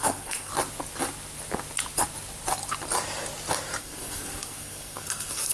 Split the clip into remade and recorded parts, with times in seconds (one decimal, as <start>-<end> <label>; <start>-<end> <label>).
0.0-0.5 remade; 0.5-3.8 recorded; 3.8-5.5 remade